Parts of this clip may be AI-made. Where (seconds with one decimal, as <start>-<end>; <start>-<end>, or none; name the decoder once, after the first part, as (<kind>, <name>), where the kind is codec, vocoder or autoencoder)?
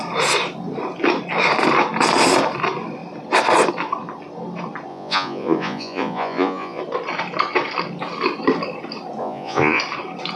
4.9-6.8 (vocoder, Vocos); 9.2-9.8